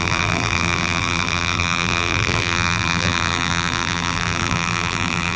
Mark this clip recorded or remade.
remade